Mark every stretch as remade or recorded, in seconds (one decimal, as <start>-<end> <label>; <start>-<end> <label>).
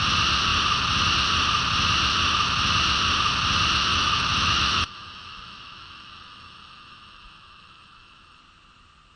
0.0-3.9 recorded; 3.9-8.4 remade; 8.4-9.2 recorded